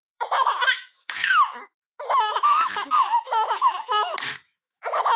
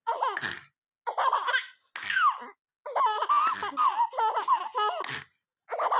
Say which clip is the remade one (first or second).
first